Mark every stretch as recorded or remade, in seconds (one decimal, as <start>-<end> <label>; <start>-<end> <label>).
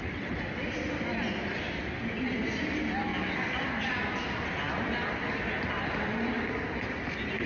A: 0.0-7.5 recorded